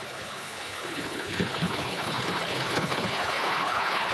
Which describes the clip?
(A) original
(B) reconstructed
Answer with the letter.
B